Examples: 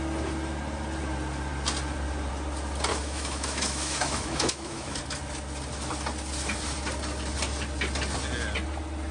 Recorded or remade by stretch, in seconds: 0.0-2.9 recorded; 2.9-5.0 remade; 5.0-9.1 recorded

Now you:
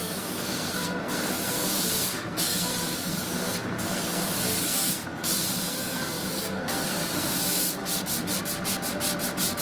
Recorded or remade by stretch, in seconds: 0.0-7.8 remade; 7.8-9.6 recorded

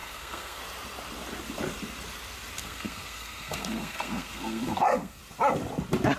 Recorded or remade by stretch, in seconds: 0.0-0.6 remade; 0.6-2.6 recorded; 2.6-5.2 remade; 5.2-6.2 recorded

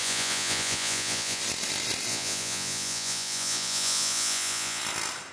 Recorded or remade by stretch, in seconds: 0.0-1.4 remade; 1.4-2.1 recorded; 2.1-4.8 remade; 4.8-5.3 recorded

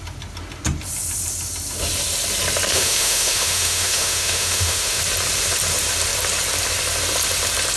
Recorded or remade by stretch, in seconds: 0.0-2.7 recorded; 2.7-5.0 remade; 5.0-7.8 recorded

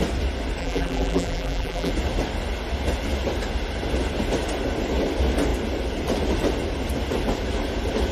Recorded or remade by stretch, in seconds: 0.0-0.6 recorded; 0.6-1.9 remade; 1.9-8.1 recorded

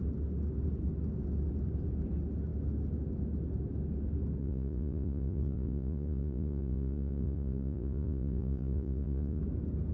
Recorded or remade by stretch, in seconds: 0.0-4.4 recorded; 4.4-9.4 remade; 9.4-9.9 recorded